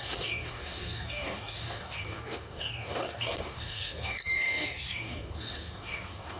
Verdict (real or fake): fake